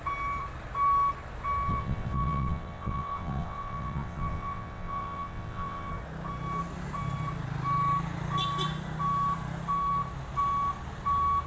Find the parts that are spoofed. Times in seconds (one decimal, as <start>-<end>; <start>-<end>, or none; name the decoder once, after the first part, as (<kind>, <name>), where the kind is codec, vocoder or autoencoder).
1.7-5.9 (vocoder, WaveNeXt)

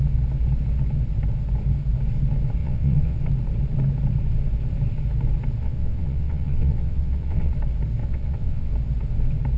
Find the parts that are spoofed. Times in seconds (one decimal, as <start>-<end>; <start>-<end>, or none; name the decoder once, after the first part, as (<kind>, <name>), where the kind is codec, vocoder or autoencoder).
2.6-3.2 (vocoder, WaveNeXt); 5.6-7.5; 8.0-8.7

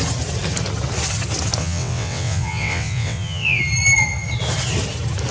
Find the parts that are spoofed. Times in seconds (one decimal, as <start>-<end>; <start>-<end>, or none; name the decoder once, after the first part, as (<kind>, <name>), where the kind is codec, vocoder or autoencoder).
1.6-3.6 (vocoder, WaveNeXt)

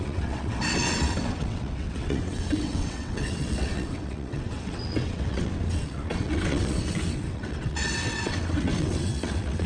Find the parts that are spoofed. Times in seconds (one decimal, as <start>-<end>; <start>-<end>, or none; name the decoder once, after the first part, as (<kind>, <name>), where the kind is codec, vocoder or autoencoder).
0.0-9.7 (vocoder, WaveNeXt)

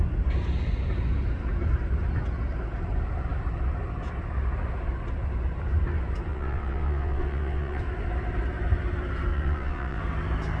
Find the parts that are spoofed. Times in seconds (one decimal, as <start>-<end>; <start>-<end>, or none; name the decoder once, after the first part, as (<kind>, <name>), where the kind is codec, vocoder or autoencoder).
6.3-7.8 (vocoder, WaveNeXt); 9.3-10.0